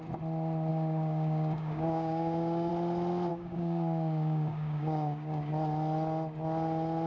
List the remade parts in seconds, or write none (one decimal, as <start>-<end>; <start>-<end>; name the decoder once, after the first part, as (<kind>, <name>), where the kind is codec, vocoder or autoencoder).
0.7-2.7 (codec, DAC); 3.3-5.5